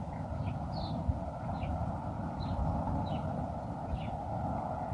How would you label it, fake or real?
real